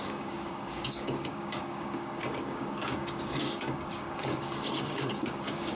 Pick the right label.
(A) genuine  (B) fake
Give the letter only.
B